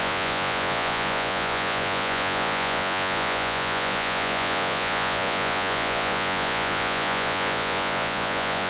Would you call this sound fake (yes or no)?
yes